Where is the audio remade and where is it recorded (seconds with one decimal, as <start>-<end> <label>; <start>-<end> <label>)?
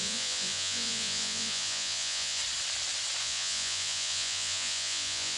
0.0-2.4 remade; 2.4-3.2 recorded; 3.2-5.4 remade